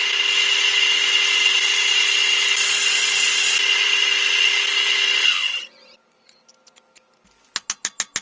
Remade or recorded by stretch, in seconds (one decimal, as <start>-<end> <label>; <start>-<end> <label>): 0.0-8.2 recorded